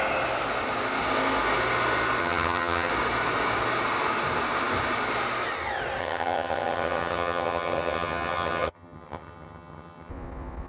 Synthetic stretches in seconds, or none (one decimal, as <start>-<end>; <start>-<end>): 2.2-2.9; 6.0-10.1